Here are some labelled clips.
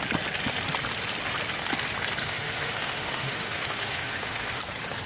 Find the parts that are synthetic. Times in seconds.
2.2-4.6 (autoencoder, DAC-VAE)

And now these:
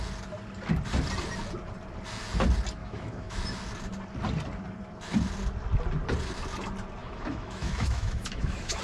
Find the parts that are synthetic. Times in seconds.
2.8-3.4 (autoencoder, DAC-VAE); 7.0-8.8

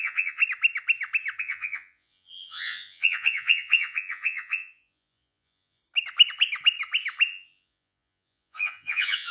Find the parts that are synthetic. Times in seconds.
0.0-0.4 (vocoder, Vocos); 1.4-5.8; 7.3-9.3

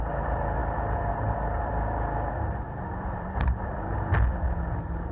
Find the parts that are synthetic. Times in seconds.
2.9-3.7 (vocoder, BigVGAN v2)

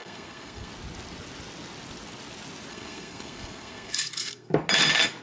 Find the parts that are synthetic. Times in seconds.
0.0-0.7 (codec, SNAC); 2.7-4.5